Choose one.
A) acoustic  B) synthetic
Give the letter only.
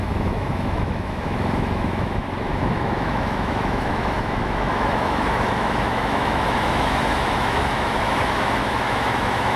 B